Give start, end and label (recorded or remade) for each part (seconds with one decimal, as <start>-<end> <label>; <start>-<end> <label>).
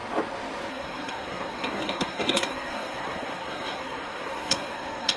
0.0-0.7 recorded; 0.7-5.2 remade